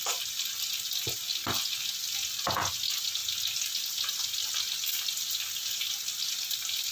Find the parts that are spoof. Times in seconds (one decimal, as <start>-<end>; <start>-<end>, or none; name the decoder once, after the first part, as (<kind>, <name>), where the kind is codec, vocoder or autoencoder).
none